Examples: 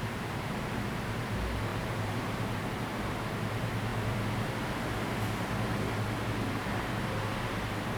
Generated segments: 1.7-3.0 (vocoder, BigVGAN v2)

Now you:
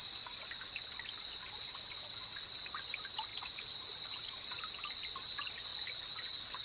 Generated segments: 3.3-4.7 (vocoder, BigVGAN v2)